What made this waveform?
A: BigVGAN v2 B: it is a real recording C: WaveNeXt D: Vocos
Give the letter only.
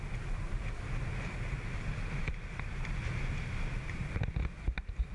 B